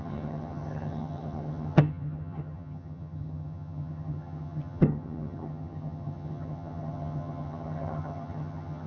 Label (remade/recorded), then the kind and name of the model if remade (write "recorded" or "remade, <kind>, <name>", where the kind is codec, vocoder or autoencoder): remade, vocoder, HiFi-GAN